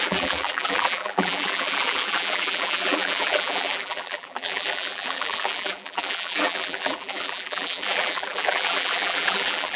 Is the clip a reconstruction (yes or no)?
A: yes